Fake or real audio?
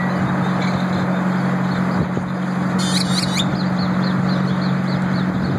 real